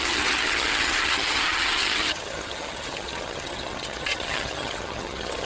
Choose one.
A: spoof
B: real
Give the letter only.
A